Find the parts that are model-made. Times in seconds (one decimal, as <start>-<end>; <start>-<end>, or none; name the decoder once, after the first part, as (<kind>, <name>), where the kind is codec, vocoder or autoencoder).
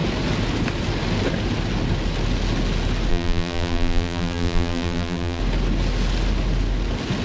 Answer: 3.1-5.4 (vocoder, BigVGAN v2)